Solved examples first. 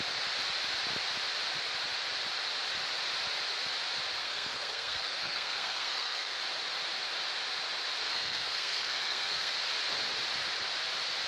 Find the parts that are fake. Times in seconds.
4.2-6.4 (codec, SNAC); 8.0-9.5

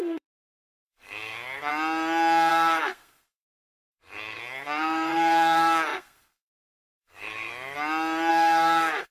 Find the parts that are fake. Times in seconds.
0.0-1.7 (codec, SNAC); 2.5-7.5; 8.3-9.1

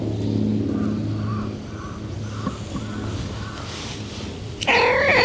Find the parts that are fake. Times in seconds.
none

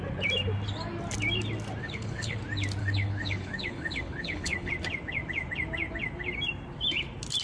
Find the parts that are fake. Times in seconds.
1.8-2.4 (codec, HILCodec); 2.8-4.7

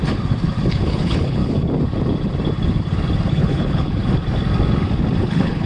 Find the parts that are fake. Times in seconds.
0.7-1.4 (codec, HILCodec); 3.3-4.0; 5.2-5.7